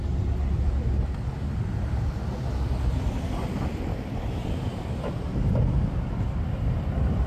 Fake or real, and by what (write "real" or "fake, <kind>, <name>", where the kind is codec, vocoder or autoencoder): real